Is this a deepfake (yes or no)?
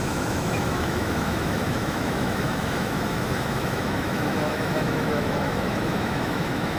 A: yes